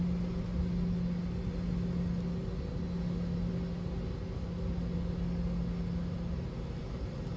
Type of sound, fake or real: real